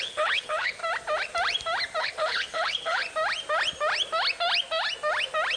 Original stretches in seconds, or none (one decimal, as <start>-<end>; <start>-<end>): 0.8-2.0; 3.0-5.6